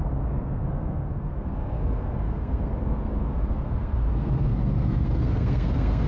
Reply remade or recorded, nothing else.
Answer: remade